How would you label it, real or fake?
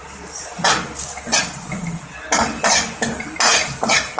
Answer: real